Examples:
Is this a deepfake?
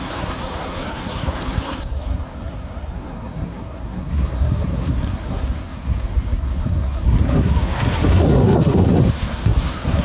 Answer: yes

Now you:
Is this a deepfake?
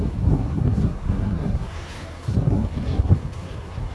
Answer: yes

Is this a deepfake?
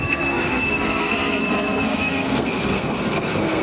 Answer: yes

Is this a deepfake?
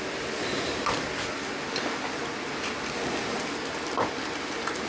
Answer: no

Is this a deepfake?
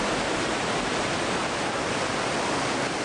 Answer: no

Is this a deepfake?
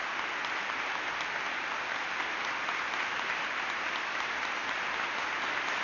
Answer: no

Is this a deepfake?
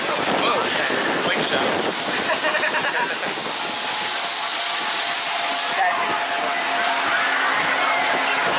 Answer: no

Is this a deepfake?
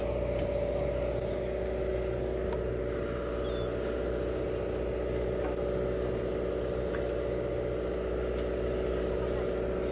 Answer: no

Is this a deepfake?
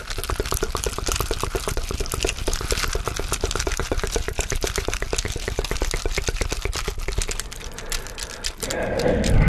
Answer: no